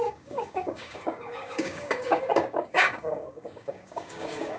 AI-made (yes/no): yes